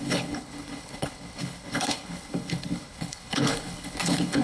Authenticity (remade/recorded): remade